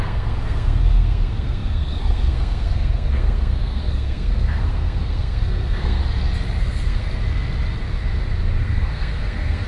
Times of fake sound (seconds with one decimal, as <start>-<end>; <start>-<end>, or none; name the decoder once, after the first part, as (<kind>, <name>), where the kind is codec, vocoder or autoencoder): 0.0-6.0 (codec, SNAC); 6.6-7.1; 8.6-9.7